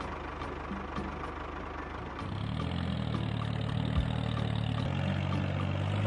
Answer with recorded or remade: recorded